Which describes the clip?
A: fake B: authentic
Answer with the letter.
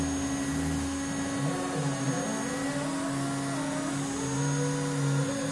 B